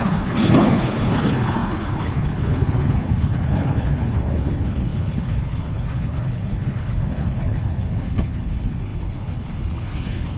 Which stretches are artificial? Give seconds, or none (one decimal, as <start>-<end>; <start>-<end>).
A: 0.0-10.4